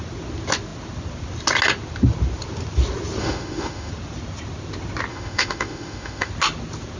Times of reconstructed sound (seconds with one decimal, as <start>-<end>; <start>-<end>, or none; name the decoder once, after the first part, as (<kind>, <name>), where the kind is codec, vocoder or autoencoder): 3.2-3.9 (autoencoder, DAC-VAE); 5.1-6.3